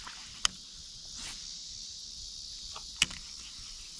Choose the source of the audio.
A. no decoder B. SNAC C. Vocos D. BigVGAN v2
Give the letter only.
A